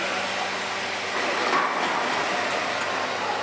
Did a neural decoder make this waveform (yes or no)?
no